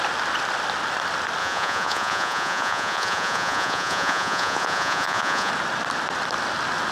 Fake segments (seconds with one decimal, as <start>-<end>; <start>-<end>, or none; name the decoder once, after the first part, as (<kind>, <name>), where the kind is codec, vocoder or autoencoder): 1.4-5.5 (vocoder, Vocos)